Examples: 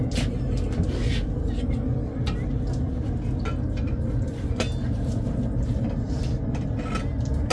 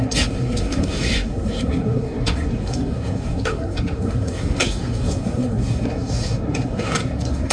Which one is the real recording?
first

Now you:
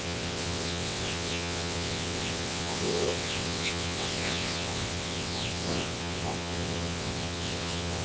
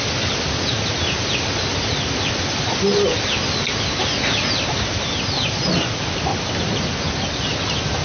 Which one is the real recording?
second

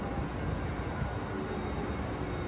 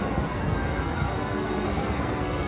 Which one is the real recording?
first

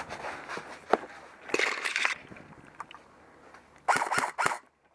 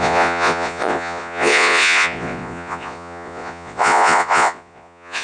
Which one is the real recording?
first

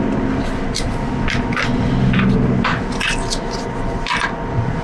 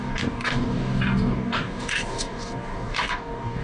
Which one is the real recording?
first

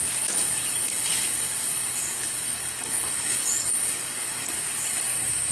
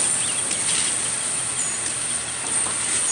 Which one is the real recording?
second